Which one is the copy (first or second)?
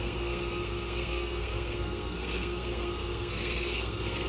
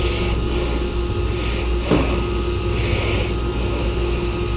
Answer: first